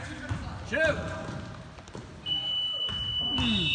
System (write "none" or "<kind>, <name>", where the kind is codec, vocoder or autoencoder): none